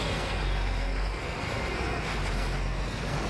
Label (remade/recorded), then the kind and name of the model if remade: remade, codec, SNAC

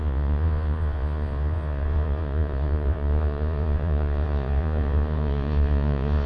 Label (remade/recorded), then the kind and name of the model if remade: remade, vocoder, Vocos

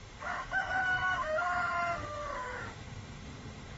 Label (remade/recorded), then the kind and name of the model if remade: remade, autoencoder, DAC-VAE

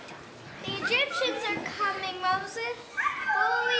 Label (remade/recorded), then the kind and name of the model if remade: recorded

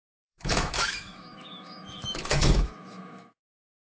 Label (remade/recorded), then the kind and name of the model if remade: remade, autoencoder, DAC-VAE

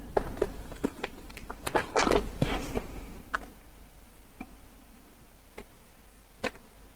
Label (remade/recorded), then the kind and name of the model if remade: recorded